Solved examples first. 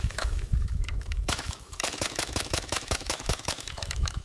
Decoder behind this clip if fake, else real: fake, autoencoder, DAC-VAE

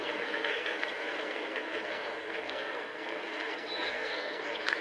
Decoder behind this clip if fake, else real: fake, codec, SNAC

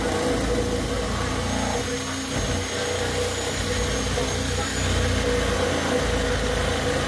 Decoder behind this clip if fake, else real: real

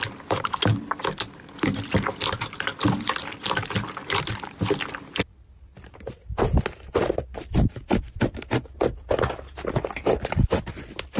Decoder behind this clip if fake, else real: real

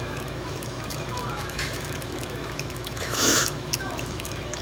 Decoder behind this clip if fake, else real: fake, autoencoder, DAC-VAE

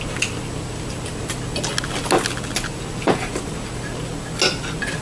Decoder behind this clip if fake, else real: real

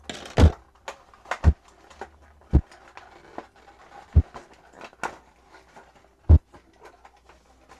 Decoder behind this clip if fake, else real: real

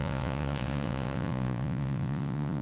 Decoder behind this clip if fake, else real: fake, vocoder, Vocos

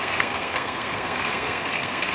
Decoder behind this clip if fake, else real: fake, codec, SNAC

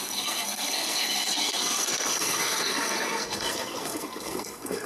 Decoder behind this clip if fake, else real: fake, codec, SNAC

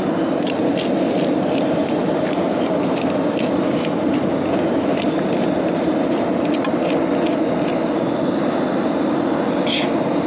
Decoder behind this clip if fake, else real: real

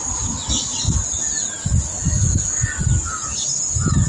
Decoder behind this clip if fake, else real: real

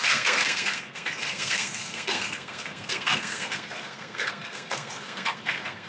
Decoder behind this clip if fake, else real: fake, codec, SNAC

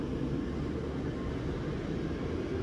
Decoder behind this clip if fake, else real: real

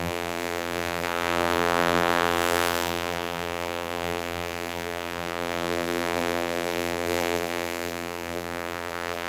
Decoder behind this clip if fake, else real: fake, vocoder, BigVGAN v2